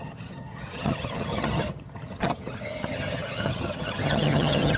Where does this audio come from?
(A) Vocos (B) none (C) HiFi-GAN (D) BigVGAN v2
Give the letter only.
C